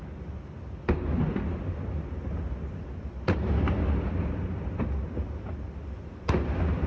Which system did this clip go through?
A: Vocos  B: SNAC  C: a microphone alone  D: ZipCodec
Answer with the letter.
C